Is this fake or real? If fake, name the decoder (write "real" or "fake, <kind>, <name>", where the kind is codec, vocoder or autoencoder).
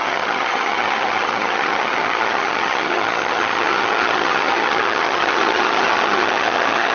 fake, vocoder, HiFi-GAN